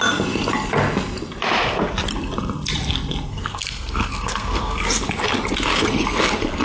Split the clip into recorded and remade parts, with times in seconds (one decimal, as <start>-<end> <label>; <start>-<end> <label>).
0.0-3.3 recorded; 3.3-5.0 remade; 5.0-6.6 recorded